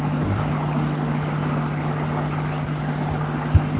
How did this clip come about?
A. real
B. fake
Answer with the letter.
A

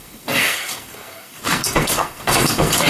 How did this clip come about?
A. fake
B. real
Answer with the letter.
A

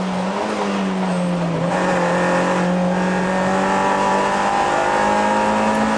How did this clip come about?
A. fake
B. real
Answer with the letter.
B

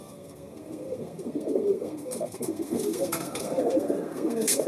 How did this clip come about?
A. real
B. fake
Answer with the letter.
B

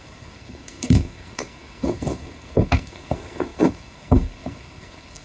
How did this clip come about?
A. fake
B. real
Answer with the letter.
A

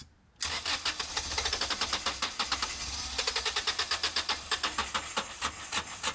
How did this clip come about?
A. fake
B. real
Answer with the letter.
B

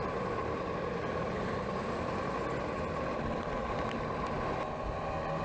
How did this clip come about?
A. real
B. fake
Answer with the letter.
A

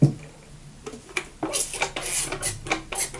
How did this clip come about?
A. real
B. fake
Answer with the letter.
A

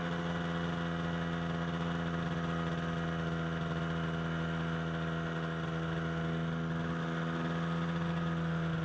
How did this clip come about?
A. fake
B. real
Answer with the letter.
B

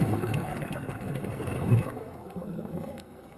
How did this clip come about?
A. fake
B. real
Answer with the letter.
A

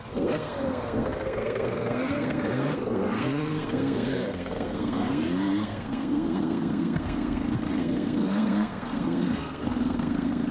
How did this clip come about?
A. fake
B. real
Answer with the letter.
A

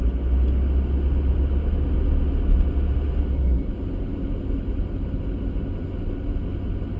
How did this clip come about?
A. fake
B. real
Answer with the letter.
B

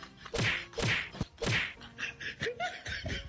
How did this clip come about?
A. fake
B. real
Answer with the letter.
B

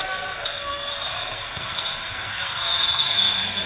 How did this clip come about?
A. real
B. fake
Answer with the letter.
B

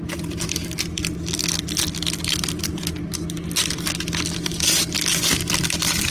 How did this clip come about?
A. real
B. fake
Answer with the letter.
A